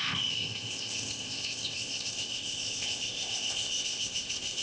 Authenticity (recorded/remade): remade